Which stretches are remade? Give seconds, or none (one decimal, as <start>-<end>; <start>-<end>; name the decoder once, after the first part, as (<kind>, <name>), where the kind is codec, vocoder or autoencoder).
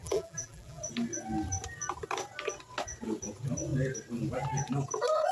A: 0.0-0.8 (vocoder, BigVGAN v2)